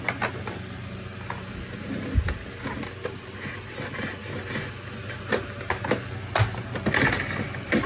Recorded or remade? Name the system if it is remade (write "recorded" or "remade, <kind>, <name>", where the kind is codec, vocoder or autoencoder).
recorded